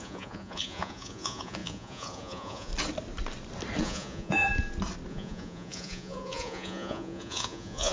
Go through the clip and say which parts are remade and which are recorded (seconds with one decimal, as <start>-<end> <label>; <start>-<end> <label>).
0.0-2.7 remade; 2.7-3.8 recorded; 3.8-4.5 remade; 4.5-5.1 recorded; 5.1-7.9 remade